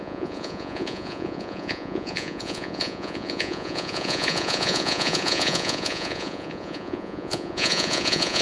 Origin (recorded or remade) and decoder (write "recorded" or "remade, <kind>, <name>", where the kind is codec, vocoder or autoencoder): remade, vocoder, Vocos